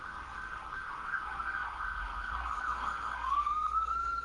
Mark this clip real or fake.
fake